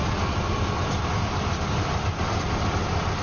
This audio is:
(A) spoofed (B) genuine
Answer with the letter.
B